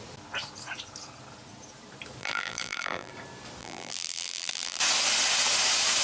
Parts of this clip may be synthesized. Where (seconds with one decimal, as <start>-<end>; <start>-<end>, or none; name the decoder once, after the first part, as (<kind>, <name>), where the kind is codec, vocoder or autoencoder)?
2.2-3.1 (vocoder, BigVGAN v2); 3.6-4.8